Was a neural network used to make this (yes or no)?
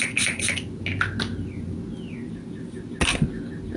no